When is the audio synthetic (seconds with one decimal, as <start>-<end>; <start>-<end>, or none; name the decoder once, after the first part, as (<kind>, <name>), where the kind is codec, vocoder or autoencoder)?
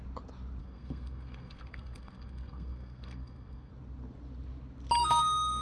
0.6-3.7 (codec, SNAC); 5.0-5.6